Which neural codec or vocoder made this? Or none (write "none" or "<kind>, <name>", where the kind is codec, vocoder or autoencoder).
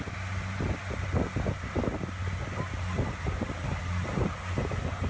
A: none